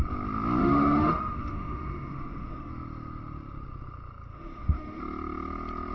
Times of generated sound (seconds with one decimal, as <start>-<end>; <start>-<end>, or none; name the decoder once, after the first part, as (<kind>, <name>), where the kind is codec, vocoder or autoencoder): 0.6-2.7 (autoencoder, DAC-VAE); 4.3-5.0